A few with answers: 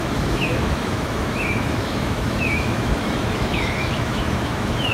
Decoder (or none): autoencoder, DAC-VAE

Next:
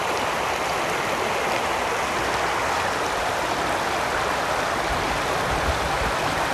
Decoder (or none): none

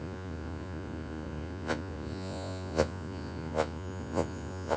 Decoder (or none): vocoder, Vocos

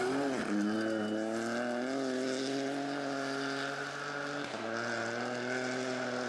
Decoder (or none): none